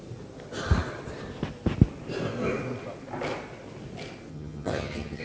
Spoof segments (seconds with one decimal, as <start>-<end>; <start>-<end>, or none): 4.3-5.2